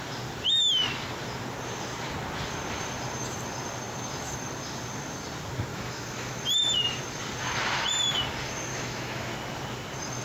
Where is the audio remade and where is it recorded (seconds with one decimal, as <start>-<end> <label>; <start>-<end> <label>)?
0.0-5.7 recorded; 5.7-6.4 remade; 6.4-8.7 recorded; 8.7-9.3 remade; 9.3-10.2 recorded